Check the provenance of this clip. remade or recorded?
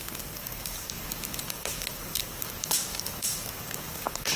remade